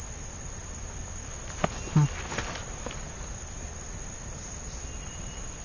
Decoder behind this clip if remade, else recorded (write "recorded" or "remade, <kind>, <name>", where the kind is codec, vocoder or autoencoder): recorded